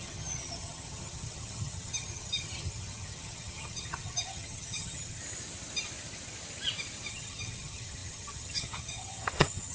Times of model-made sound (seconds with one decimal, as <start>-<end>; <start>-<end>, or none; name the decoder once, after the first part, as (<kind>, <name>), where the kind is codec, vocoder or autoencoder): 0.0-5.2 (vocoder, HiFi-GAN); 7.1-9.7